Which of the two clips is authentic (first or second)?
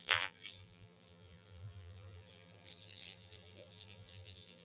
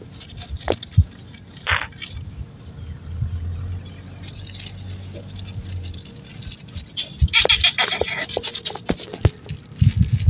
second